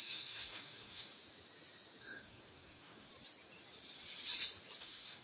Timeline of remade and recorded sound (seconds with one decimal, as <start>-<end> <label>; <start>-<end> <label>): 0.0-1.1 remade; 1.1-2.0 recorded; 2.0-3.1 remade; 3.1-4.8 recorded; 4.8-5.2 remade